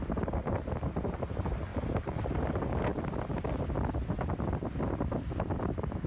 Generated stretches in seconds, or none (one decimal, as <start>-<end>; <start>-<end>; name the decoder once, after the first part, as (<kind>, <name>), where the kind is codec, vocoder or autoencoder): 1.7-2.5 (vocoder, BigVGAN v2)